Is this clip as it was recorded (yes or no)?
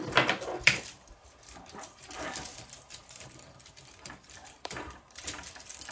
no